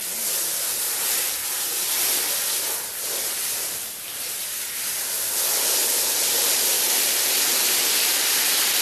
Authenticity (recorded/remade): recorded